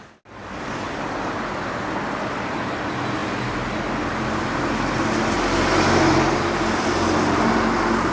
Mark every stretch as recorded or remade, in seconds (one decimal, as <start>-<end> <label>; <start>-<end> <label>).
0.0-8.1 recorded